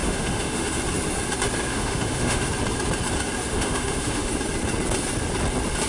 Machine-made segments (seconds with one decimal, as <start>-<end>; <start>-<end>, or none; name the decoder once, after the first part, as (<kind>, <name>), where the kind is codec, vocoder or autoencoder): 0.0-0.8 (autoencoder, DAC-VAE); 1.7-2.5; 3.5-4.3